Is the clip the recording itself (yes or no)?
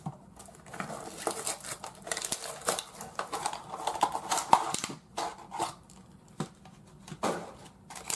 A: yes